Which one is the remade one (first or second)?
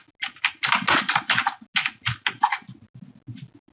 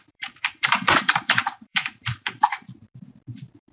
second